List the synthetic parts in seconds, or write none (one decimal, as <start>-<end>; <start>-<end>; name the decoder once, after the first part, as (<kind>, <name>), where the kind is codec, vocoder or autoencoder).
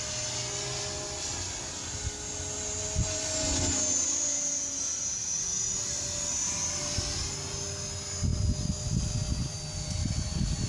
10.0-10.7 (vocoder, BigVGAN v2)